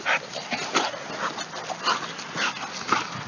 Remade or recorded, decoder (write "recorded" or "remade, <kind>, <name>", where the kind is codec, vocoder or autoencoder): recorded